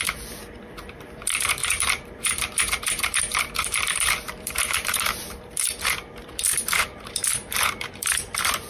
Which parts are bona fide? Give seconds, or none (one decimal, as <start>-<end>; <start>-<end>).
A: none